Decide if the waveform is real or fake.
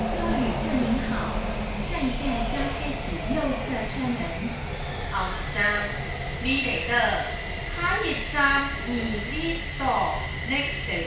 real